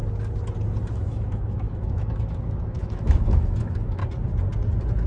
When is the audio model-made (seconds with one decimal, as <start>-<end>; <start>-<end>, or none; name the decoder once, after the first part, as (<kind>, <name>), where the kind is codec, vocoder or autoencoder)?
0.9-4.0 (autoencoder, DAC-VAE)